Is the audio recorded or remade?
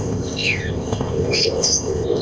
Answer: remade